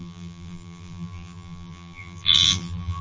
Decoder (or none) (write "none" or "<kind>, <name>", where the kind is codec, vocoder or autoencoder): vocoder, BigVGAN v2